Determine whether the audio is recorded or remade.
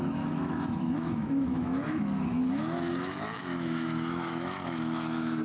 remade